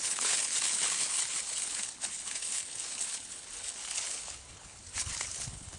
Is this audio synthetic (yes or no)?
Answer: yes